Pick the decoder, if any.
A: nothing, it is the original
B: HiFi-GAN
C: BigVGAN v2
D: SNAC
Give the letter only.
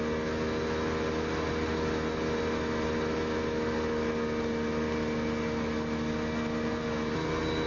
A